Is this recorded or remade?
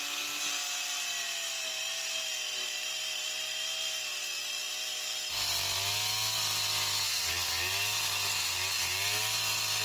recorded